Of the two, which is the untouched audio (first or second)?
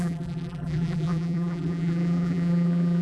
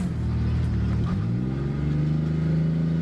second